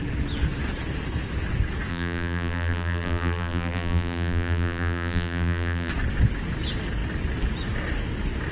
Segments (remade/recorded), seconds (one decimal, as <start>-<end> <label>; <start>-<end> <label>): 0.0-1.9 recorded; 1.9-5.9 remade; 5.9-8.5 recorded